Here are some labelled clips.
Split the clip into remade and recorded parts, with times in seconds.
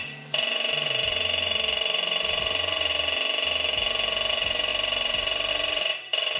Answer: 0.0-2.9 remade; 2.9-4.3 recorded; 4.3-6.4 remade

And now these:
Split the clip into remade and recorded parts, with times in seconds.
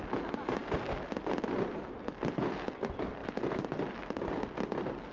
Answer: 0.0-5.1 recorded